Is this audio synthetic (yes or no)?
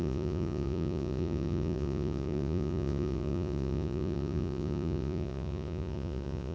yes